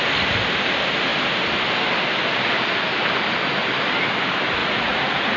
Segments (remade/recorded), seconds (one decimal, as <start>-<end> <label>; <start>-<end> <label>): 0.0-4.6 recorded; 4.6-5.4 remade